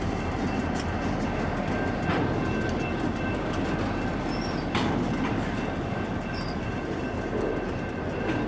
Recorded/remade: recorded